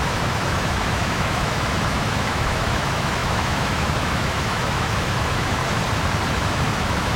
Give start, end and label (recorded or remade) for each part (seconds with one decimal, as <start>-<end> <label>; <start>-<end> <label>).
0.0-5.6 remade; 5.6-6.3 recorded; 6.3-7.2 remade